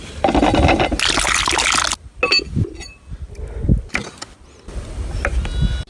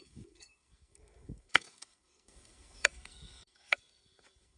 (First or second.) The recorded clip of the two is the first